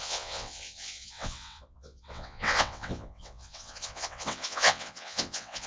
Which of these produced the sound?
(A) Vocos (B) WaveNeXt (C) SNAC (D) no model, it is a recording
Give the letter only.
B